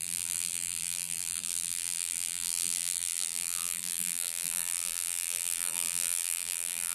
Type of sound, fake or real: fake